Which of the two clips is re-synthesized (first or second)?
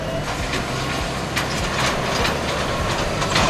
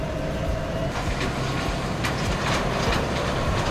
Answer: second